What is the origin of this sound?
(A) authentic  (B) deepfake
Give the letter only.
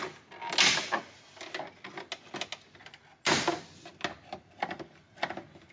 A